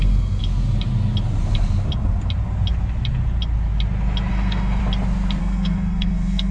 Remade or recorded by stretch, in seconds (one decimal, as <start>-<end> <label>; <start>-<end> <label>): 0.0-0.4 remade; 0.4-4.3 recorded; 4.3-4.8 remade; 4.8-5.4 recorded; 5.4-6.5 remade